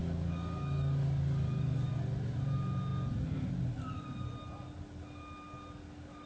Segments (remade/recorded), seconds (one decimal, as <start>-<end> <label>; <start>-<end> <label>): 0.0-1.9 remade; 1.9-6.3 recorded